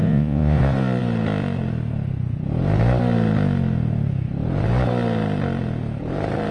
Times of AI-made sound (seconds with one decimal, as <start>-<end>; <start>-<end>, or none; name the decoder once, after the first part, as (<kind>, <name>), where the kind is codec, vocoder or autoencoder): 0.0-0.6 (vocoder, Vocos)